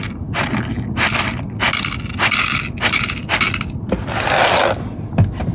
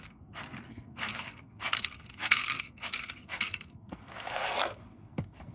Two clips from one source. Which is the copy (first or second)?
second